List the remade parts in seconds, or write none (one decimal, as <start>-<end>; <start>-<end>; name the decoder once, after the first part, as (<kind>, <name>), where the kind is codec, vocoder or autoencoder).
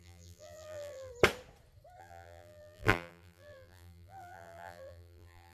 0.0-1.1 (vocoder, BigVGAN v2); 2.0-5.5